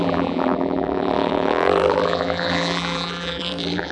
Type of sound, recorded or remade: remade